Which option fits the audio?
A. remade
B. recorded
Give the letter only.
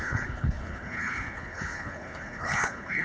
A